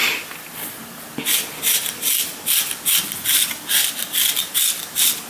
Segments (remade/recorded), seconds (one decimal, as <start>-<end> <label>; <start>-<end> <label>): 0.0-0.5 remade; 0.5-5.3 recorded